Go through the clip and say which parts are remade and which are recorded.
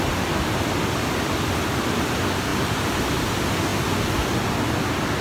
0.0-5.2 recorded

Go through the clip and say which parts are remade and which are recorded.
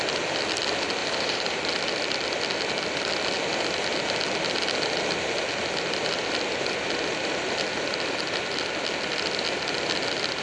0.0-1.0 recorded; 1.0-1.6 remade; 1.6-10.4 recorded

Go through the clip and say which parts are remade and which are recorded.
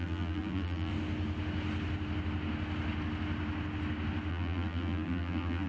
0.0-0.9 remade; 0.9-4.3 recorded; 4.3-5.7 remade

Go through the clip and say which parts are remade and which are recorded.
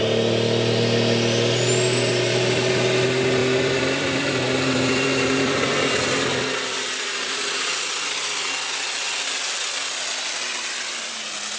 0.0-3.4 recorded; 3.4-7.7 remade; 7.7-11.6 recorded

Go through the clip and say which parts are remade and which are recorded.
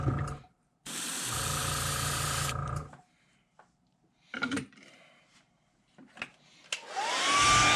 0.0-1.6 recorded; 1.6-5.5 remade; 5.5-7.8 recorded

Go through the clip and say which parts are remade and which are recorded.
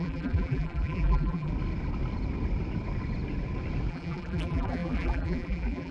0.0-1.5 remade; 1.5-3.9 recorded; 3.9-5.9 remade